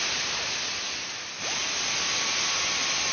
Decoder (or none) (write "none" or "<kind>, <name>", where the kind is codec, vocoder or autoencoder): none